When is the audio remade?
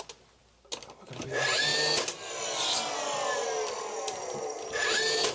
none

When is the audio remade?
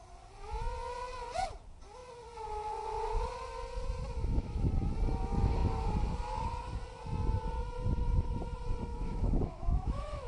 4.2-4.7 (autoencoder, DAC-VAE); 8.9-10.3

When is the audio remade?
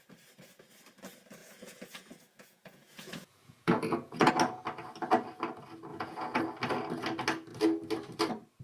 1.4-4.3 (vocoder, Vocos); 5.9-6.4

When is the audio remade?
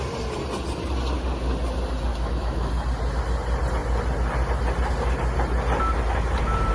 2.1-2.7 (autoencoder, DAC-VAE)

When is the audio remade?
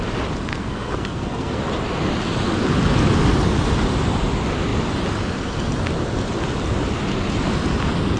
0.5-1.6 (codec, SNAC)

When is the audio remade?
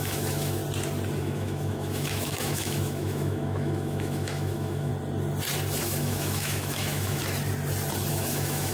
0.0-0.6 (autoencoder, DAC-VAE); 1.2-4.9; 5.8-7.2; 8.1-8.7